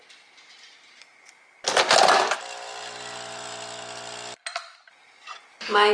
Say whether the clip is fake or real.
real